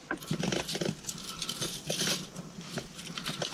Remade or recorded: recorded